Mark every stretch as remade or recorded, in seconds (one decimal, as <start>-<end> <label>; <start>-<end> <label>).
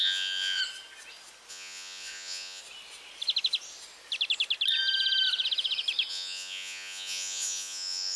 0.0-0.6 remade; 0.6-1.5 recorded; 1.5-2.6 remade; 2.6-6.1 recorded; 6.1-8.2 remade